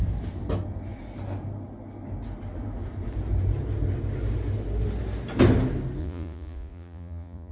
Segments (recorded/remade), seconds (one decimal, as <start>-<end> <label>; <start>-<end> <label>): 0.0-6.0 recorded; 6.0-7.5 remade